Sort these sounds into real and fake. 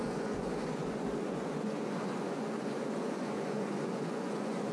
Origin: fake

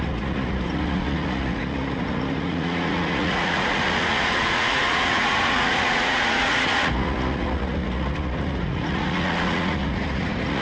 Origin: fake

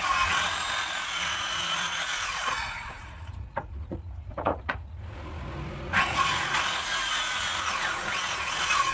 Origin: fake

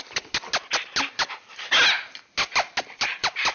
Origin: real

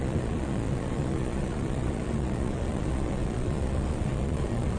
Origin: fake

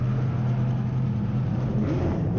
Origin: real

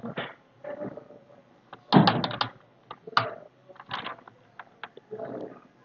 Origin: real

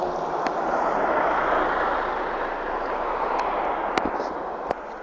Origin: real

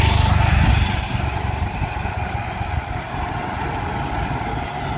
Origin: real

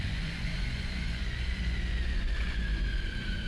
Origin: fake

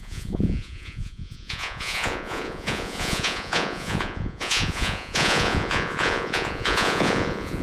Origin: fake